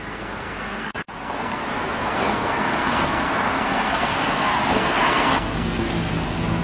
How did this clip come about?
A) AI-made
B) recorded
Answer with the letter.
A